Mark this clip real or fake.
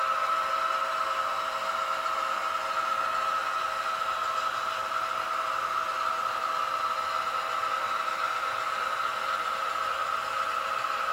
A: real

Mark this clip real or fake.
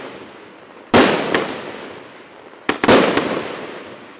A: real